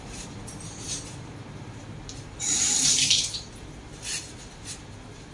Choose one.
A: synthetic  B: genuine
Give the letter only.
A